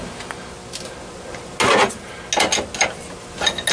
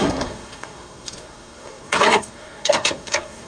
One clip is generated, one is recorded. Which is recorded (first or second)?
first